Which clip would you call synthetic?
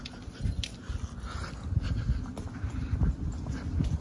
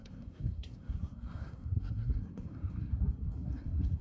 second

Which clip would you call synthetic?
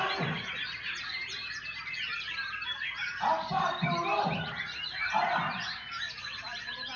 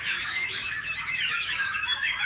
second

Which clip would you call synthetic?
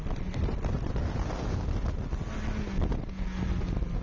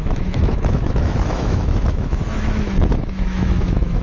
second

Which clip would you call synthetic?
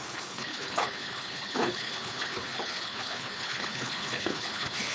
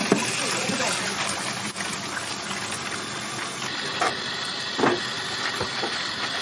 first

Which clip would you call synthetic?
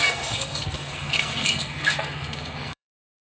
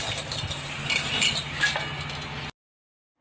first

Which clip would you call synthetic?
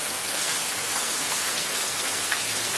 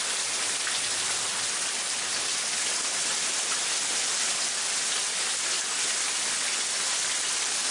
first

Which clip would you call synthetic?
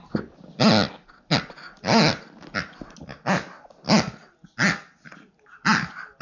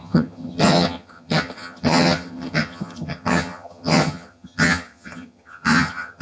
second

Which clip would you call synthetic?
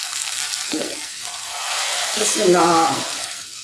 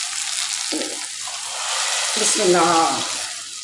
first